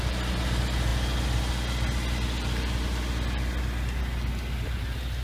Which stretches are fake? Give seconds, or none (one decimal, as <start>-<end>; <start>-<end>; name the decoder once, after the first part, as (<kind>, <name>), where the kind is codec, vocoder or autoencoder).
none